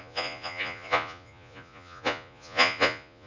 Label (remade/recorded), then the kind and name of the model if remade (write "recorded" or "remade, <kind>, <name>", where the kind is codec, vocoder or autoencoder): remade, vocoder, Vocos